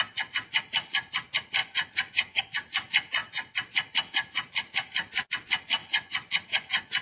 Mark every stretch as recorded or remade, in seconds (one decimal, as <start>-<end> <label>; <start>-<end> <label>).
0.0-1.6 recorded; 1.6-2.4 remade; 2.4-5.8 recorded; 5.8-7.0 remade